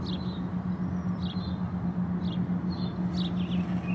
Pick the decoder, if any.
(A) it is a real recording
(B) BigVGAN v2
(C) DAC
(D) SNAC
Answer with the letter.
A